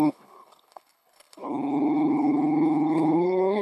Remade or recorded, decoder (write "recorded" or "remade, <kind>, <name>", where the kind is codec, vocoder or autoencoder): remade, codec, HILCodec